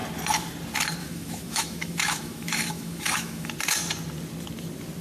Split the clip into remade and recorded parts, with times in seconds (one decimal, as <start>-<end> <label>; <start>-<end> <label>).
0.0-1.0 recorded; 1.0-3.5 remade; 3.5-5.0 recorded